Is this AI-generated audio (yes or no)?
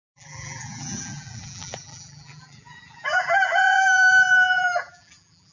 yes